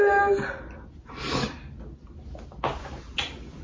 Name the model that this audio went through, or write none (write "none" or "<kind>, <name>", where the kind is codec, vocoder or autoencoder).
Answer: none